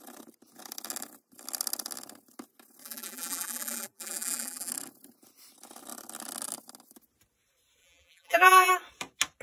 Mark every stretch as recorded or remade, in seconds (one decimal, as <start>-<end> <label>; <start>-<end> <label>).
0.0-2.8 recorded; 2.8-4.7 remade; 4.7-7.8 recorded; 7.8-8.7 remade; 8.7-9.4 recorded